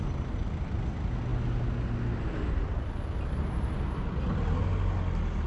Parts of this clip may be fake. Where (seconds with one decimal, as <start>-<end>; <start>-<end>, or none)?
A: none